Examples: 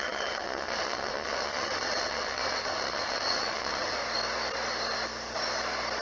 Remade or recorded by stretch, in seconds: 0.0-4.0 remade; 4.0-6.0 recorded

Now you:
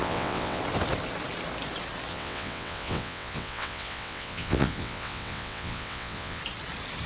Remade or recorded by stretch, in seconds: 0.0-0.6 remade; 0.6-2.1 recorded; 2.1-6.4 remade; 6.4-7.1 recorded

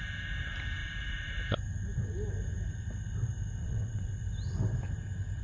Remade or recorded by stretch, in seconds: 0.0-3.6 recorded; 3.6-4.2 remade; 4.2-5.4 recorded

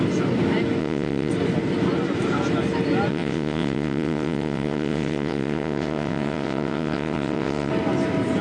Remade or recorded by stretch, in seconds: 0.0-0.8 recorded; 0.8-1.3 remade; 1.3-3.1 recorded; 3.1-7.7 remade; 7.7-8.4 recorded

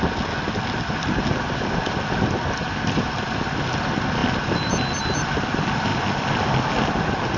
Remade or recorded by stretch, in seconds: 0.0-7.4 recorded

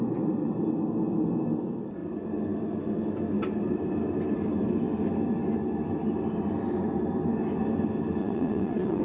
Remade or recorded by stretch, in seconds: 0.0-8.2 recorded; 8.2-9.0 remade

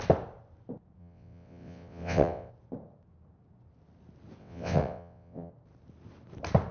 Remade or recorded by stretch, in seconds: 0.0-1.0 recorded; 1.0-2.5 remade; 2.5-4.4 recorded; 4.4-5.5 remade; 5.5-6.7 recorded